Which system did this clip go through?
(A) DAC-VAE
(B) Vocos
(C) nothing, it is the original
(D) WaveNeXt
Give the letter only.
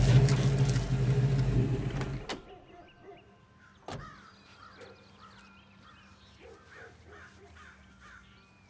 C